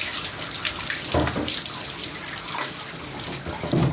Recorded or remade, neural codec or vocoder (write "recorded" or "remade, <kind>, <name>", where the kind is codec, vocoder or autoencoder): recorded